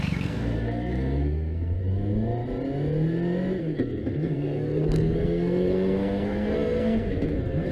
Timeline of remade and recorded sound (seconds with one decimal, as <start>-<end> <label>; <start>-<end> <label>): 0.0-1.8 remade; 1.8-3.6 recorded; 3.6-7.7 remade